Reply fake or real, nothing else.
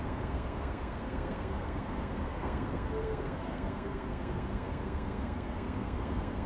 fake